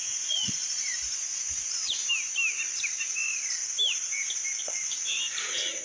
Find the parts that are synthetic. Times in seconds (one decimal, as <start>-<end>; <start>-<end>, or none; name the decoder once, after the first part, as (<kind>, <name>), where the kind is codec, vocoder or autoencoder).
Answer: 0.0-2.1 (vocoder, Vocos)